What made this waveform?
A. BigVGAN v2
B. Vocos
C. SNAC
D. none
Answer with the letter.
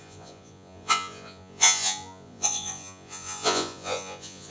B